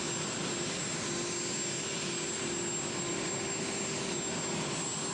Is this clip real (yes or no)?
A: yes